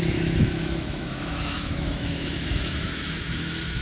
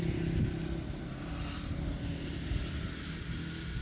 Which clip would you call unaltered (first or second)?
second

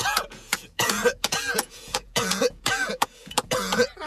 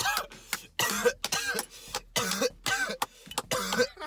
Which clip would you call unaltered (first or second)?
second